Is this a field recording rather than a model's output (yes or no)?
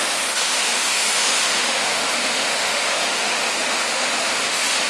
no